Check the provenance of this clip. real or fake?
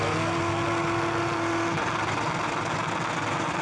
real